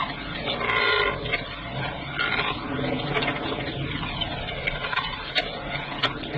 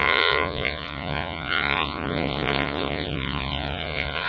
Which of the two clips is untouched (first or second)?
first